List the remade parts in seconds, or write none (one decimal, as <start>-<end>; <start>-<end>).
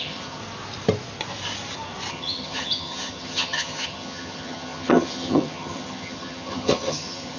0.0-0.4; 2.1-7.4